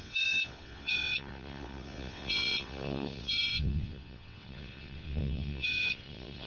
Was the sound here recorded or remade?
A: remade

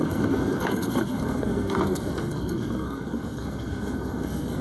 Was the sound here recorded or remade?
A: remade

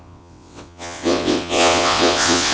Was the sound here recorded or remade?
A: remade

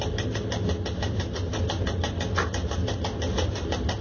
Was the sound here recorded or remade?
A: recorded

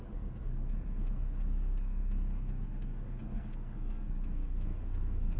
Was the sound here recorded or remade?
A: remade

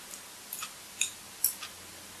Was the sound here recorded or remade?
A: recorded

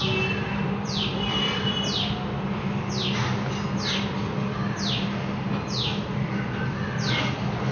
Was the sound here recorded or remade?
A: recorded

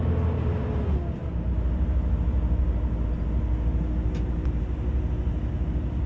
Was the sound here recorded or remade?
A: recorded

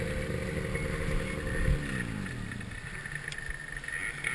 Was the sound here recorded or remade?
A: recorded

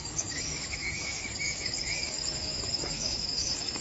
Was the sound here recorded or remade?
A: remade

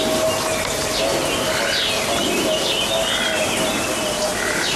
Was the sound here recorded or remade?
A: recorded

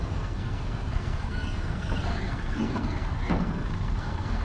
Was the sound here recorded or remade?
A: remade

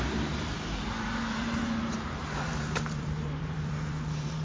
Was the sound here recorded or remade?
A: remade